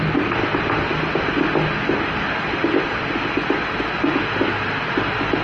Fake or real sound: real